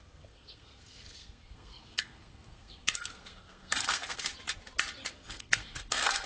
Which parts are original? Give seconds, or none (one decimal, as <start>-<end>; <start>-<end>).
4.3-5.1